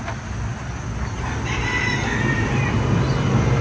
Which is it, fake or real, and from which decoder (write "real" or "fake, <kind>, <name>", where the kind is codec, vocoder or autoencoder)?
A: real